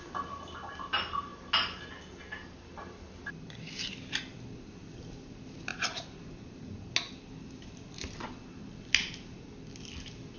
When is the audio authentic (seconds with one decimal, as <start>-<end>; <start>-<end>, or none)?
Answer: 0.0-10.4

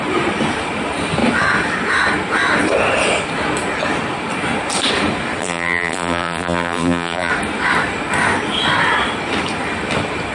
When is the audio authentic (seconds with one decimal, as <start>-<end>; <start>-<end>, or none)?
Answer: 0.0-5.4; 7.3-10.3

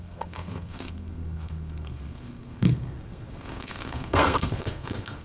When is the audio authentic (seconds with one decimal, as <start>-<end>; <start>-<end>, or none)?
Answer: none

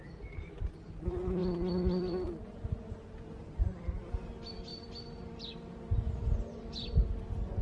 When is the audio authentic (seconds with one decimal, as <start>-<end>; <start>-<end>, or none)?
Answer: 0.0-4.7; 5.7-7.6

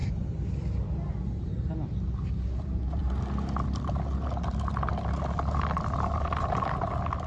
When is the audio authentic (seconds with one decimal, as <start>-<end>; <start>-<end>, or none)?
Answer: 3.0-7.3